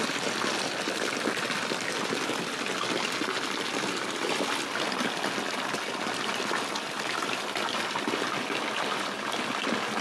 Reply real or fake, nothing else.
real